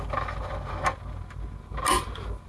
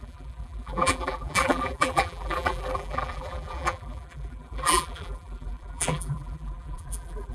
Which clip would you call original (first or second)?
first